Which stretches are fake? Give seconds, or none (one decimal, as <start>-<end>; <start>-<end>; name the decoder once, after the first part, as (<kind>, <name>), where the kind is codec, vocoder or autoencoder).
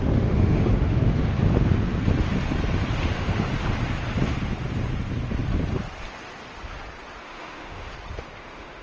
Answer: 0.0-1.3 (autoencoder, DAC-VAE); 3.0-3.5; 7.2-7.9; 8.4-8.8